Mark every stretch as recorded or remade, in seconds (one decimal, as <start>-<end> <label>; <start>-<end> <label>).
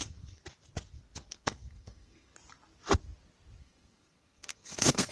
0.0-0.4 remade; 0.4-1.3 recorded; 1.3-2.3 remade; 2.3-3.6 recorded; 3.6-5.1 remade